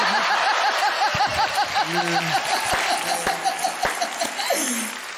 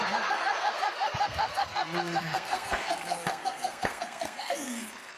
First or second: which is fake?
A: second